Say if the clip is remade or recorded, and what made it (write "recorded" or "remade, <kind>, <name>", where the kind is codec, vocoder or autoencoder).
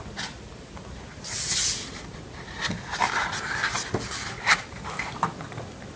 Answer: remade, vocoder, BigVGAN v2